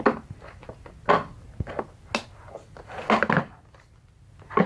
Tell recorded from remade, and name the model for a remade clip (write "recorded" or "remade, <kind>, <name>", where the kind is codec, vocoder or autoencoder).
recorded